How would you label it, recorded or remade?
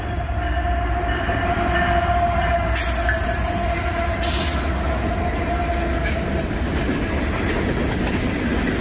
recorded